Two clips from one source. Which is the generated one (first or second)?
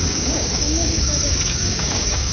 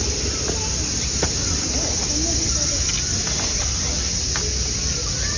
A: first